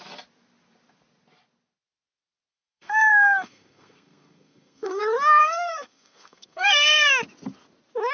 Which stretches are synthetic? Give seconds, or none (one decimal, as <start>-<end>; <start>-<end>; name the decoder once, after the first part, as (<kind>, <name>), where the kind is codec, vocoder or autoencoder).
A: 2.5-5.0 (codec, SNAC); 5.4-7.1

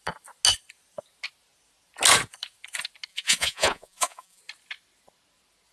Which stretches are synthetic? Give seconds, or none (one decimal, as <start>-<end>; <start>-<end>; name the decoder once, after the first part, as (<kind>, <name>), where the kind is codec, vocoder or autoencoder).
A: 3.1-4.4 (vocoder, Vocos)

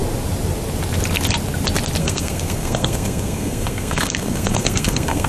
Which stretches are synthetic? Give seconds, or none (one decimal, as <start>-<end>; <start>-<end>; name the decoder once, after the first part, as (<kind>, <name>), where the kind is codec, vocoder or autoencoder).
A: 2.0-5.3 (codec, SNAC)

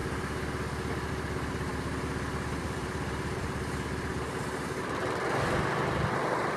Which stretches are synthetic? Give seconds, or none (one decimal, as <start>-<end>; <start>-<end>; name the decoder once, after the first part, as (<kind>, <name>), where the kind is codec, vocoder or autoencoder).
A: 1.1-6.6 (vocoder, BigVGAN v2)